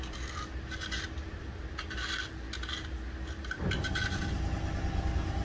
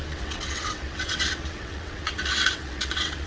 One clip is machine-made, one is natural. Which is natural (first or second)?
first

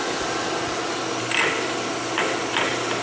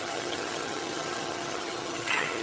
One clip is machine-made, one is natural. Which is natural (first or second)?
first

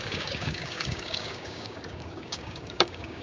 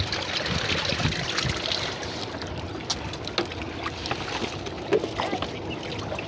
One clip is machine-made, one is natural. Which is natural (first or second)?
second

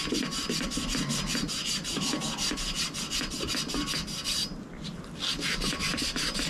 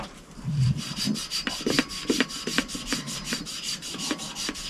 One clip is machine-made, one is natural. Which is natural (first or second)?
first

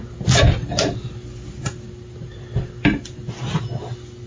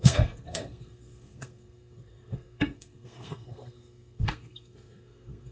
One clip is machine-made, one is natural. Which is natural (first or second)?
first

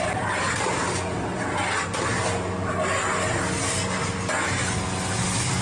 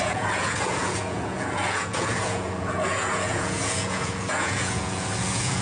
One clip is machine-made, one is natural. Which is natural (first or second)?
first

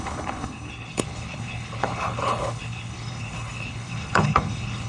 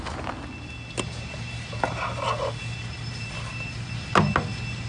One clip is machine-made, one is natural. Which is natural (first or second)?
second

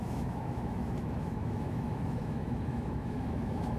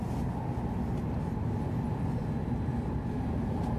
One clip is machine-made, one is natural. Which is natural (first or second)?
second